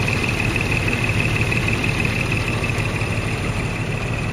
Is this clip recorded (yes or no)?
no